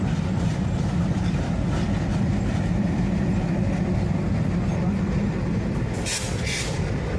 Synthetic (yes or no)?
no